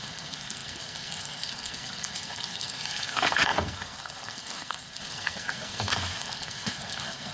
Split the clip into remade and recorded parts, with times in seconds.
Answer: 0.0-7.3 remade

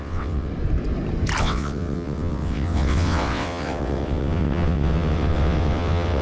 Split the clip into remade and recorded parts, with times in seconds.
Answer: 0.0-0.5 remade; 0.5-1.4 recorded; 1.4-6.2 remade

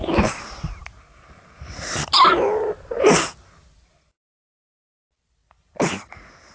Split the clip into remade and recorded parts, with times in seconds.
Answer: 0.0-6.5 recorded

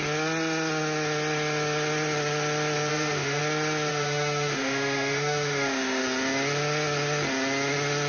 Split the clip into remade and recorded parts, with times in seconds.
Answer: 0.0-2.9 recorded; 2.9-3.4 remade; 3.4-3.9 recorded; 3.9-6.0 remade; 6.0-8.1 recorded

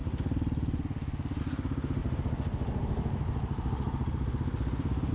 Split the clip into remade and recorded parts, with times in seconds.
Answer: 0.0-5.1 recorded

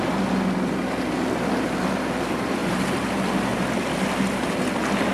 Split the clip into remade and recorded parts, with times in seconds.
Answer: 0.0-5.1 recorded

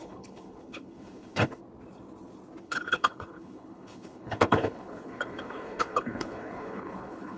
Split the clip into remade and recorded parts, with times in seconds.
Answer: 0.0-1.6 remade; 1.6-2.6 recorded; 2.6-7.4 remade